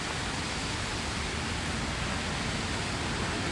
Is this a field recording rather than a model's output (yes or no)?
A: yes